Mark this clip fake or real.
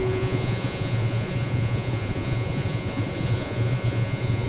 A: fake